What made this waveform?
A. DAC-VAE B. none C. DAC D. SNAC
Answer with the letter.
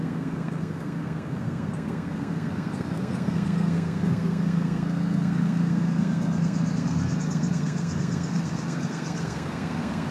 D